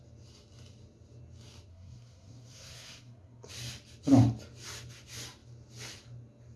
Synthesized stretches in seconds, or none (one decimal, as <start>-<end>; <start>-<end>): 1.7-3.5